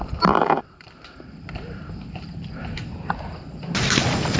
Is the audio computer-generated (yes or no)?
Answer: no